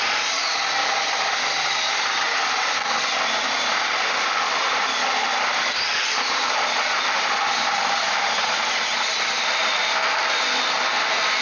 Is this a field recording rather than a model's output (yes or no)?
yes